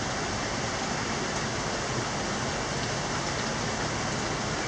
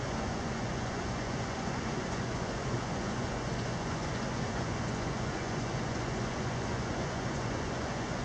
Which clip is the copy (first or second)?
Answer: second